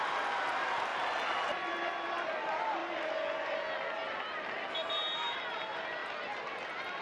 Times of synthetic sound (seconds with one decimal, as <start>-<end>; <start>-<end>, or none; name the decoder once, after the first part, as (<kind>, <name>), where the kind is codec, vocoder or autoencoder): none